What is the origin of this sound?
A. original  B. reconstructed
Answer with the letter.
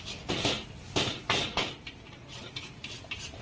B